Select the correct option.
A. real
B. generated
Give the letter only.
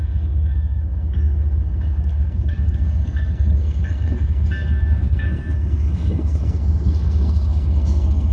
B